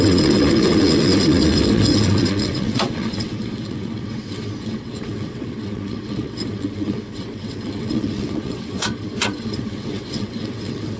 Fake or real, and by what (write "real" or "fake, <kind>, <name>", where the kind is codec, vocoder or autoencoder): fake, vocoder, WaveNeXt